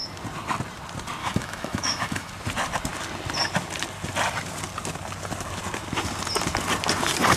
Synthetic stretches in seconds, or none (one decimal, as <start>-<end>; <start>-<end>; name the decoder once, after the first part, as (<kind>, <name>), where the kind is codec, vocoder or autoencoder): 1.2-2.3 (autoencoder, DAC-VAE)